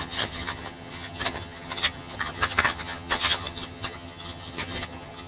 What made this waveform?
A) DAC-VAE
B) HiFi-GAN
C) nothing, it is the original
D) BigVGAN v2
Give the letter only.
B